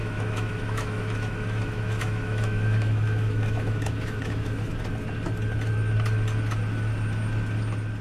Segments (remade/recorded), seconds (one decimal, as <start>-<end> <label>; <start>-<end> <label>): 0.0-4.8 remade; 4.8-8.0 recorded

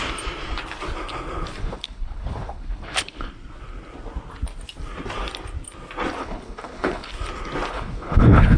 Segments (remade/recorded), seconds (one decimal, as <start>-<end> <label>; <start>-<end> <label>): 0.0-1.6 recorded; 1.6-3.3 remade; 3.3-6.2 recorded; 6.2-7.1 remade; 7.1-7.7 recorded; 7.7-8.6 remade